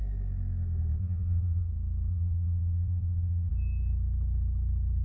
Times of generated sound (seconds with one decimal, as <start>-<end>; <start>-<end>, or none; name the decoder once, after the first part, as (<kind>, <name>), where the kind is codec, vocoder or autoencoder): 1.0-1.7 (vocoder, BigVGAN v2); 2.1-3.5